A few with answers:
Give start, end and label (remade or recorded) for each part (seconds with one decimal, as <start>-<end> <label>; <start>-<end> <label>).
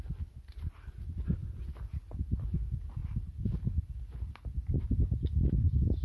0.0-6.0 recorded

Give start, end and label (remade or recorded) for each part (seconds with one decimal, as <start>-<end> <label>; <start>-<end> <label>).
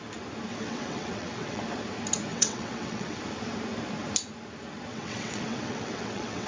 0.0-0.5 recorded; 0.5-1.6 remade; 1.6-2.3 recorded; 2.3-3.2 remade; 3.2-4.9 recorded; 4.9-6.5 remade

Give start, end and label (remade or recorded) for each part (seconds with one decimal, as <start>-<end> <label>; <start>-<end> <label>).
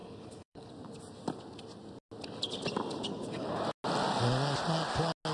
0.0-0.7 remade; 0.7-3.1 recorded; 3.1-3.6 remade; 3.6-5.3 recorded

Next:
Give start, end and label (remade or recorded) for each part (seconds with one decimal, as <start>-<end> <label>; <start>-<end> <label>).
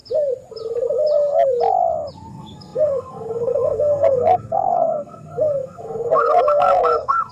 0.0-2.3 recorded; 2.3-7.3 remade